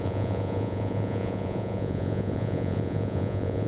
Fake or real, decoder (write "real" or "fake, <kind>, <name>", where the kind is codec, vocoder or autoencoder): fake, vocoder, Vocos